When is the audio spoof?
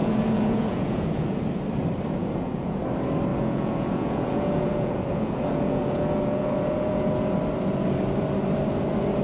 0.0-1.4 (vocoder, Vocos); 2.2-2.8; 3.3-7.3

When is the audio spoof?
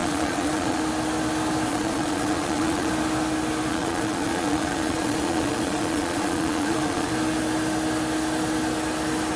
0.0-0.8 (vocoder, Vocos); 1.7-2.9; 3.7-7.1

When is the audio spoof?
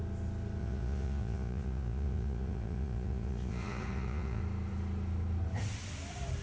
0.6-4.4 (vocoder, Vocos)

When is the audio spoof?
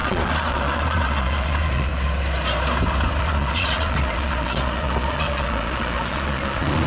0.0-1.9 (vocoder, Vocos); 3.2-6.9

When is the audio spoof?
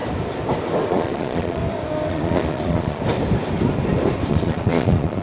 0.9-1.6 (vocoder, Vocos); 2.1-3.0; 4.3-5.2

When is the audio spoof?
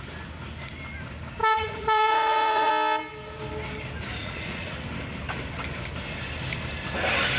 1.4-2.7 (vocoder, Vocos); 4.2-4.7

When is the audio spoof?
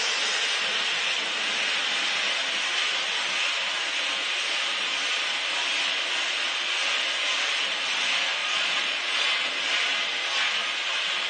8.4-9.5 (vocoder, Vocos)